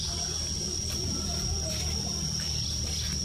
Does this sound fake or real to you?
real